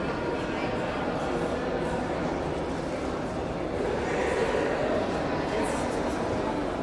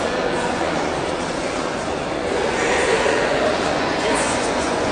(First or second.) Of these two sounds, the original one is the first